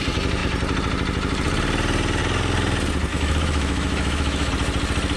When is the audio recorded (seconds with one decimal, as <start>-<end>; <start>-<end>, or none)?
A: 0.0-3.1; 4.5-5.2